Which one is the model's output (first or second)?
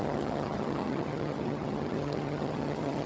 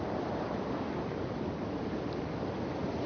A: first